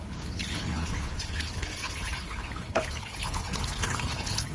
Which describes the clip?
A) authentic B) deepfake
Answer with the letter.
B